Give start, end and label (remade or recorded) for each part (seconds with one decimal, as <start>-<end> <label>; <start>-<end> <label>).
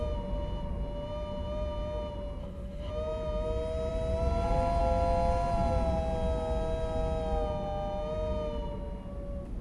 0.0-2.4 recorded; 2.4-2.9 remade; 2.9-9.6 recorded